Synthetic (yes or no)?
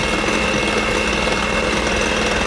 no